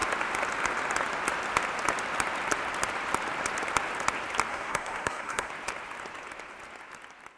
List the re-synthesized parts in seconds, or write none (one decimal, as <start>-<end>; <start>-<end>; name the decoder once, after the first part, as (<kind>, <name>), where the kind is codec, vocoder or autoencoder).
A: 4.5-5.5 (codec, SNAC)